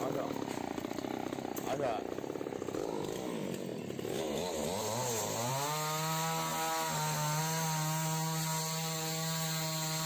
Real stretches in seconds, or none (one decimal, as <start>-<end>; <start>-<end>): 0.0-10.1